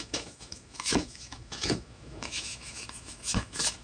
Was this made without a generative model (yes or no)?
no